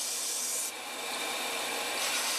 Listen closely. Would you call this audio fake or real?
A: real